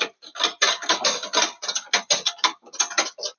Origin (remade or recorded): recorded